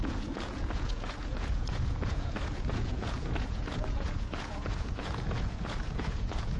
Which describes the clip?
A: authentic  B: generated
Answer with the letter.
B